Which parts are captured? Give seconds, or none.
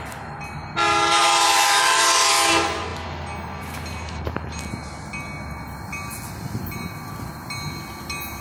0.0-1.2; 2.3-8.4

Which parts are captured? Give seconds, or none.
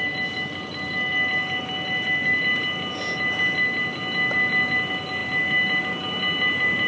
0.0-6.9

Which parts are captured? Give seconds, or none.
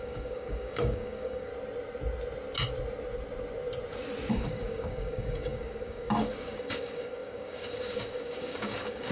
1.5-4.3